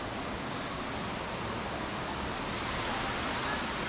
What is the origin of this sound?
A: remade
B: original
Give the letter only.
B